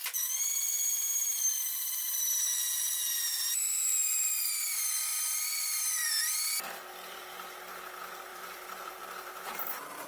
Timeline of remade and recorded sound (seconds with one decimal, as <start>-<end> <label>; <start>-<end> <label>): 0.0-8.3 recorded; 8.3-10.1 remade